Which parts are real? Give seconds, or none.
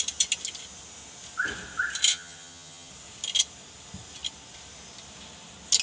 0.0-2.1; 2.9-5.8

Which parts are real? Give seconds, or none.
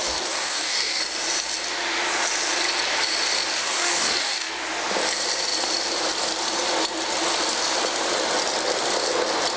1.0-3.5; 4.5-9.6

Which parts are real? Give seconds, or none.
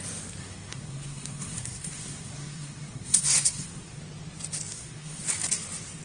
0.0-0.4; 4.0-4.7; 5.2-6.0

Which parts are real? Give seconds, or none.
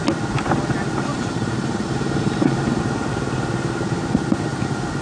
0.0-1.1; 2.8-5.0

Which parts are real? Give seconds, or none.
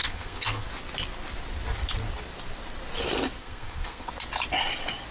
0.6-3.4; 4.1-5.1